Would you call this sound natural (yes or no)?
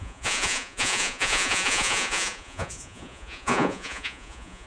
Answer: no